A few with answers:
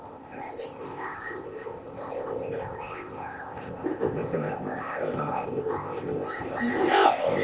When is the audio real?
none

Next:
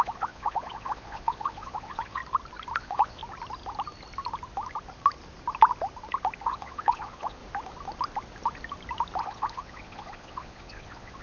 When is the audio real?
2.2-2.8; 3.2-6.4; 7.4-9.2

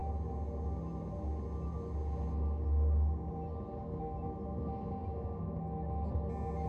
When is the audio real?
0.0-6.7

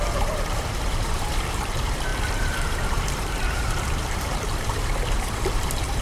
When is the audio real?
none

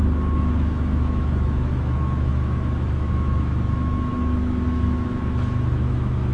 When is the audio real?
none